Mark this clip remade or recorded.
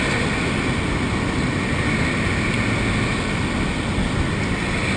recorded